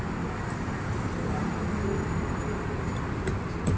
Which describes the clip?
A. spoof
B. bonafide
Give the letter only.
B